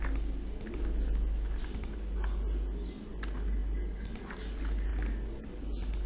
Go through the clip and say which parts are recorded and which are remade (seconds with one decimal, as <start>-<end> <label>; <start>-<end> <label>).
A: 0.0-6.1 recorded